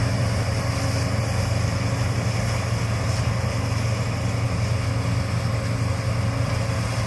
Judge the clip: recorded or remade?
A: recorded